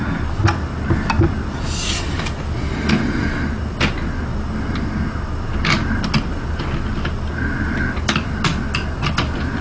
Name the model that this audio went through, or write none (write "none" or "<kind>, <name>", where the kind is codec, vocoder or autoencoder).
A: none